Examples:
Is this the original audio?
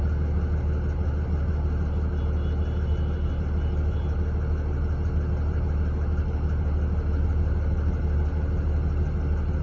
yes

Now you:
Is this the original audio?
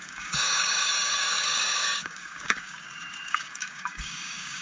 no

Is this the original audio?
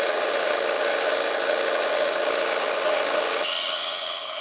no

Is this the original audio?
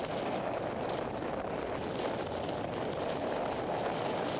yes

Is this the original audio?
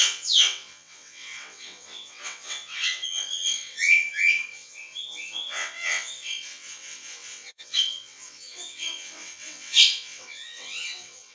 no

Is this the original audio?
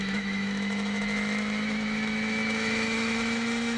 no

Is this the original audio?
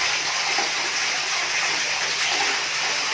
yes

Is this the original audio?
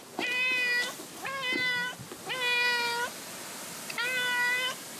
yes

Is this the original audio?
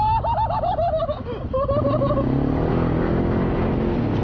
yes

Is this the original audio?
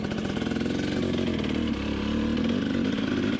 yes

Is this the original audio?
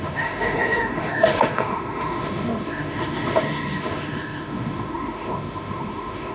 no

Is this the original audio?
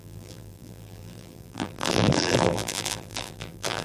no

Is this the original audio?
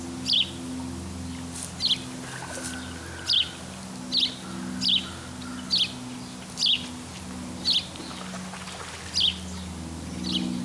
yes